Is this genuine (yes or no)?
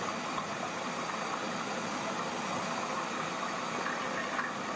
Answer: yes